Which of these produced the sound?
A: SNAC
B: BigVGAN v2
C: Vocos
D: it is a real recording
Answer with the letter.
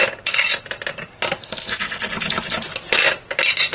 D